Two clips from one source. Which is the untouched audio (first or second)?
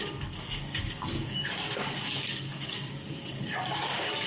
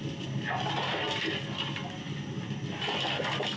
second